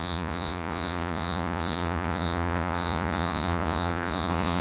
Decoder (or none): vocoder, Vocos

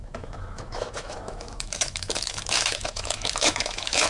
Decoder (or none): autoencoder, DAC-VAE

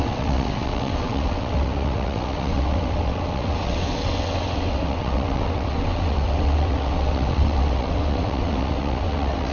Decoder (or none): vocoder, WaveNeXt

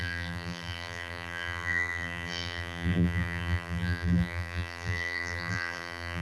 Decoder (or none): vocoder, BigVGAN v2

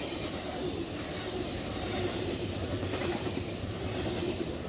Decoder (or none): vocoder, BigVGAN v2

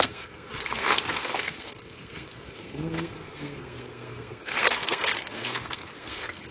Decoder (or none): codec, SNAC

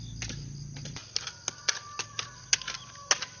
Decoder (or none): none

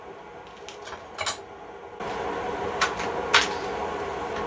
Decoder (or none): none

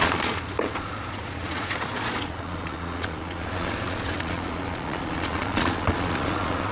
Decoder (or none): vocoder, Vocos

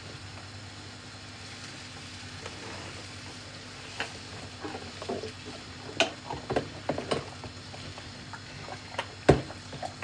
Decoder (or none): none